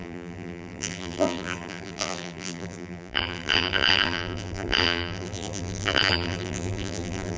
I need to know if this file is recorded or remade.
remade